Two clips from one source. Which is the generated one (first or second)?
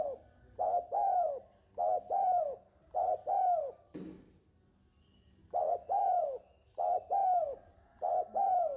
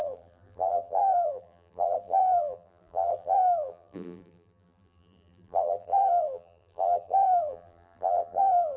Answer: second